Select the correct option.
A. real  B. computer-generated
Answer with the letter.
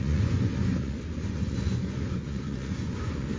B